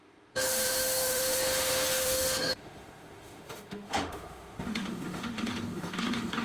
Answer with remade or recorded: remade